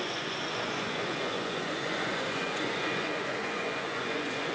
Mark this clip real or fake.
fake